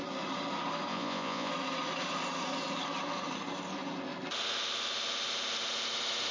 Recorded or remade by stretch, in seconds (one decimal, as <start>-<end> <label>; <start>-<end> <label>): 0.0-0.9 recorded; 0.9-1.5 remade; 1.5-6.3 recorded